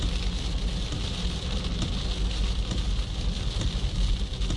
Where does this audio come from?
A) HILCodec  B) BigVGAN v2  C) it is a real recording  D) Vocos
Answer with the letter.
C